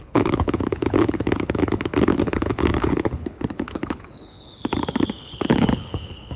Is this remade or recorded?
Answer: remade